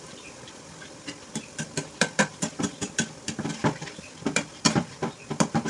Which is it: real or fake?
fake